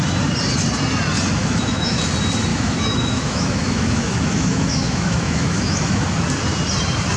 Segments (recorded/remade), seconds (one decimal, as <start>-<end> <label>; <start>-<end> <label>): 0.0-1.4 recorded; 1.4-2.0 remade; 2.0-2.5 recorded; 2.5-6.0 remade; 6.0-7.2 recorded